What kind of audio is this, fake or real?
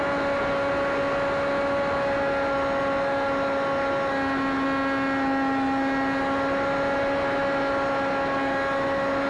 real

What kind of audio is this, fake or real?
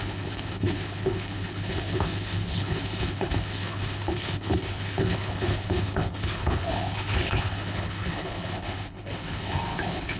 fake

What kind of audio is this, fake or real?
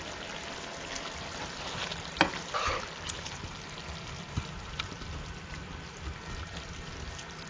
real